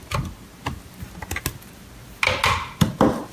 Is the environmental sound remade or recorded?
recorded